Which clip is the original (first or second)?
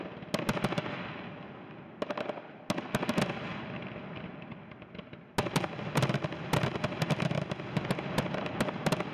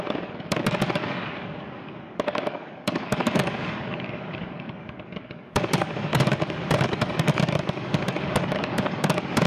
first